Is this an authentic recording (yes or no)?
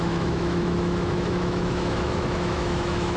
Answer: no